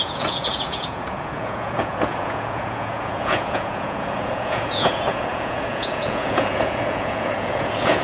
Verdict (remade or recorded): remade